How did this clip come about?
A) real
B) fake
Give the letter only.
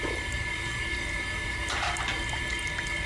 B